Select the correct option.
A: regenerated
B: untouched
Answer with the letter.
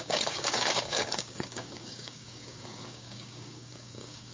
A